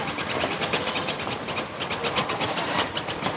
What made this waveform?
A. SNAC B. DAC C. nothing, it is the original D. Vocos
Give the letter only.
C